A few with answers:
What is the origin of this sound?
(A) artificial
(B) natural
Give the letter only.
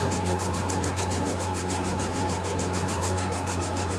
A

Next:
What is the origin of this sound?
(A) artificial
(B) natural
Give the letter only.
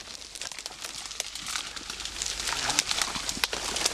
B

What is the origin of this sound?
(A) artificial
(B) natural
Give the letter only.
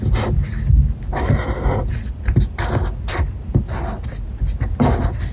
B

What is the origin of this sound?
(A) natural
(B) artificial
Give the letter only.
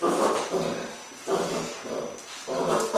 A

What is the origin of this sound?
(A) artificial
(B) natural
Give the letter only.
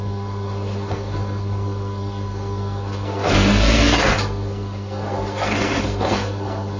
A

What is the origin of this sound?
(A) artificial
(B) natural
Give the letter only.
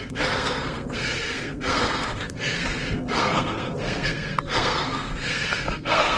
A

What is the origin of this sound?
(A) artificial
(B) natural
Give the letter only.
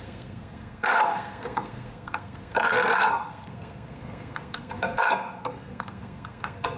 A